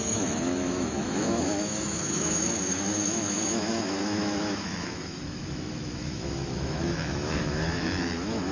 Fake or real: fake